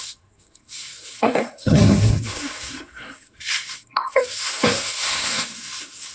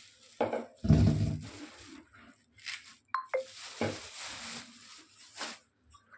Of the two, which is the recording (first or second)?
second